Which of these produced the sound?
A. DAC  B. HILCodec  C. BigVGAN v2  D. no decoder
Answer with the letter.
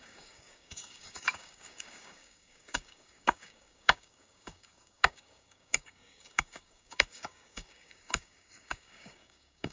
A